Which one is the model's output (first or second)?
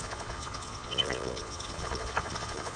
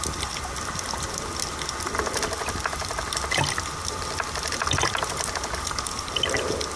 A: first